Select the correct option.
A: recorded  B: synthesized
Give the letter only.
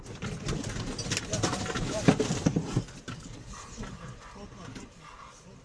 A